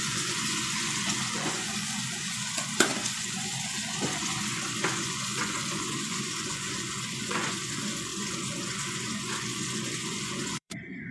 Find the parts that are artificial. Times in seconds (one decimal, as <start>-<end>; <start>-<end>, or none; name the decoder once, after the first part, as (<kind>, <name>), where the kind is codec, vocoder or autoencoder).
0.0-11.1 (vocoder, Vocos)